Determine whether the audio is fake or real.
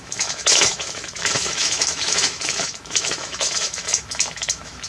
fake